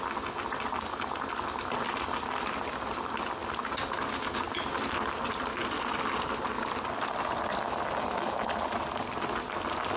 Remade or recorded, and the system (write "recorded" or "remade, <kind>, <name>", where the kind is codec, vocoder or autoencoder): recorded